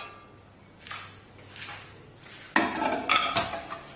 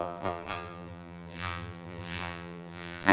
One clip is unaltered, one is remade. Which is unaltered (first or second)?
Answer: first